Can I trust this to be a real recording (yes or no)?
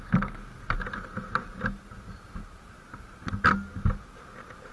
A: yes